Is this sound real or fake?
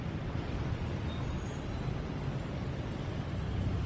real